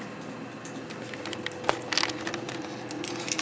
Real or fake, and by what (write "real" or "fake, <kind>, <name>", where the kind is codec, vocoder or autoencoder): real